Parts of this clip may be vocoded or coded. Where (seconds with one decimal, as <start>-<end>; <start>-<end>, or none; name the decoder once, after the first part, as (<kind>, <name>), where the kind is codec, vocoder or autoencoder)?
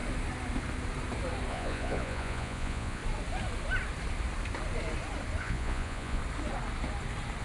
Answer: 1.5-3.0 (vocoder, Vocos); 5.4-6.2